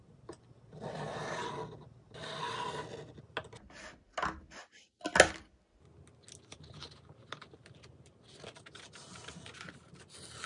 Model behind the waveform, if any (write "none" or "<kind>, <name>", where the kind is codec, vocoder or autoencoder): none